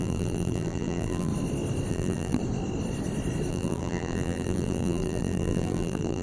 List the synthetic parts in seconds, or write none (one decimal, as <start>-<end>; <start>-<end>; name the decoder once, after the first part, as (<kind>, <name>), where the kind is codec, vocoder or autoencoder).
0.0-1.3 (vocoder, BigVGAN v2); 1.9-2.4; 3.5-6.2